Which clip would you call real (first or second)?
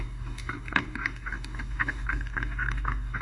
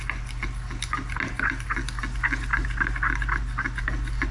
second